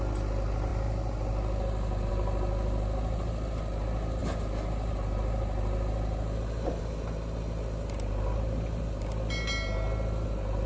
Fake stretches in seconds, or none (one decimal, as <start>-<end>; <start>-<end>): none